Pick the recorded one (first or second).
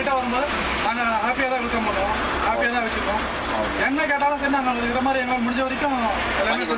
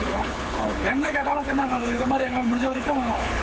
first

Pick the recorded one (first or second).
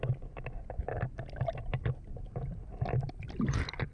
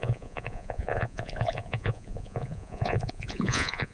first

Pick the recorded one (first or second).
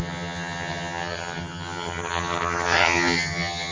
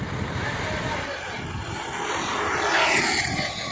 second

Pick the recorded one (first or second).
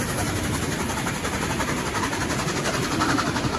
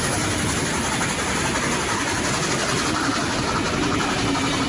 second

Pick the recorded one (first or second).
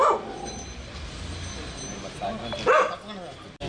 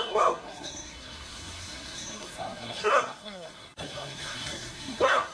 first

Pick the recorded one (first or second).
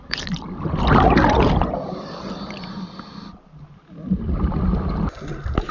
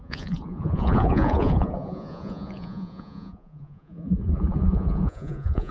first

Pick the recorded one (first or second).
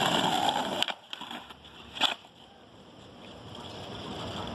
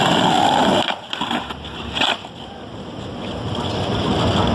second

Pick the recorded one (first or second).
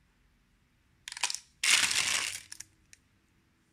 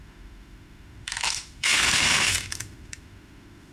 first